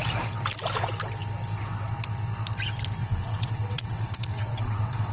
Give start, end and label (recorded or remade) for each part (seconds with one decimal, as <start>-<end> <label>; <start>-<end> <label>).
0.0-3.0 recorded; 3.0-5.1 remade